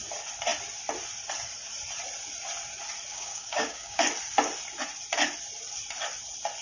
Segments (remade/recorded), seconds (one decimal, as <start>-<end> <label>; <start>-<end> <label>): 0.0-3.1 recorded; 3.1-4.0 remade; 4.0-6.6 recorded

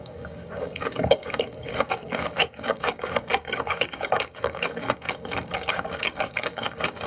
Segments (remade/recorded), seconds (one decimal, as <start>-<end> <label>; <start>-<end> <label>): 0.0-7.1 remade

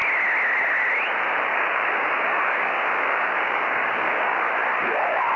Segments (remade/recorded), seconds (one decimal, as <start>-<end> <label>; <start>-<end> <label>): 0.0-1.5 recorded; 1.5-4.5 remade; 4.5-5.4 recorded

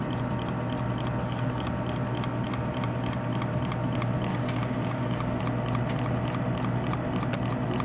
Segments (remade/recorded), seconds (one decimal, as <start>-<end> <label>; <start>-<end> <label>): 0.0-1.2 recorded; 1.2-1.7 remade; 1.7-4.3 recorded; 4.3-5.4 remade; 5.4-7.8 recorded